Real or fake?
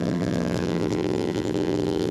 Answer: fake